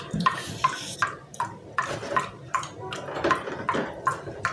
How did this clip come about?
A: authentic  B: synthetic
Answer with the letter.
A